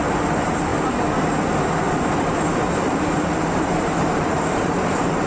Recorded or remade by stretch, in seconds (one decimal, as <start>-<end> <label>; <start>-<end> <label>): 0.0-0.7 remade; 0.7-2.1 recorded; 2.1-5.3 remade

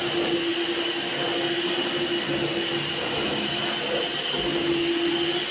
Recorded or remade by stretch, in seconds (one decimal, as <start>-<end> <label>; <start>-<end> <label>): 0.0-5.5 recorded

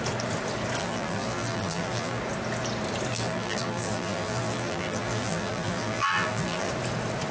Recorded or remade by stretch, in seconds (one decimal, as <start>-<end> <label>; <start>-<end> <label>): 0.0-0.8 recorded; 0.8-2.2 remade; 2.2-3.1 recorded; 3.1-6.7 remade; 6.7-7.3 recorded

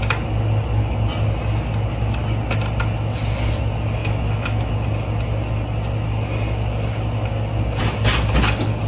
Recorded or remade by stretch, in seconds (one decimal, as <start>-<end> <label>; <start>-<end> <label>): 0.0-4.0 recorded; 4.0-4.7 remade; 4.7-8.9 recorded

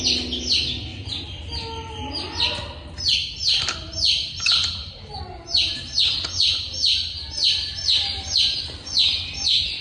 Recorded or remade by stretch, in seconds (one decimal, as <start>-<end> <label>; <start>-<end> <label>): 0.0-9.8 recorded

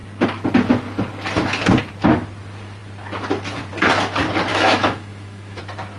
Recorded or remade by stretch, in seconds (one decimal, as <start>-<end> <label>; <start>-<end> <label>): 0.0-4.5 recorded; 4.5-5.6 remade; 5.6-6.0 recorded